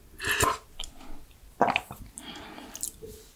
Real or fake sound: real